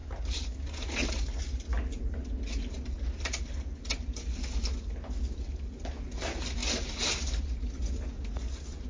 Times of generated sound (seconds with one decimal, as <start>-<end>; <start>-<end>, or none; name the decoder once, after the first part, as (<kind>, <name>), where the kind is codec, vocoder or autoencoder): none